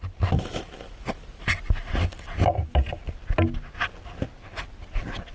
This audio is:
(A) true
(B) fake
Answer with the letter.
A